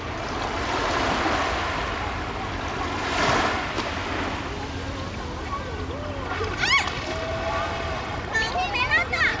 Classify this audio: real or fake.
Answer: real